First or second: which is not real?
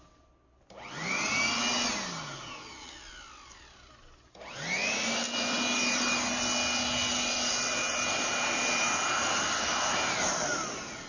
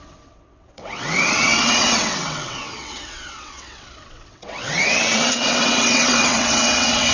second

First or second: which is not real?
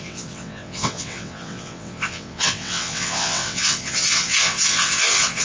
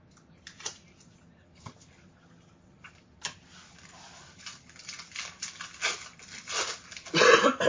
first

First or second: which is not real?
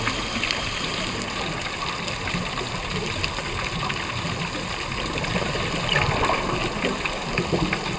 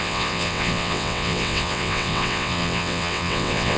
second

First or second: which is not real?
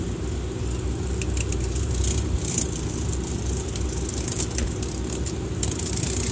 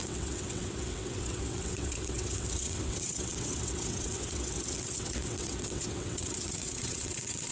second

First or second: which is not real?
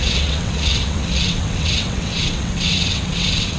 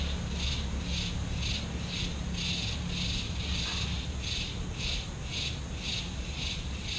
first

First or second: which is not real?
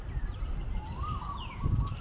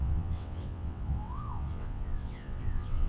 second